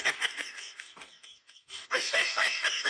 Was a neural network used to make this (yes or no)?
yes